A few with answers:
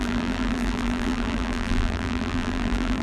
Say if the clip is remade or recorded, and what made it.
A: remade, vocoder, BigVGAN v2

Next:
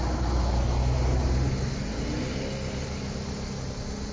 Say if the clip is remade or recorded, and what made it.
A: recorded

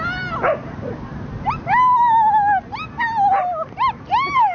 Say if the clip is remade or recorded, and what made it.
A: recorded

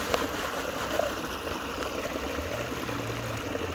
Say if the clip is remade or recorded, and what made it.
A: recorded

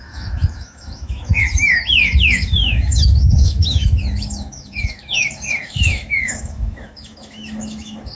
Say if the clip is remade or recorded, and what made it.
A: remade, autoencoder, DAC-VAE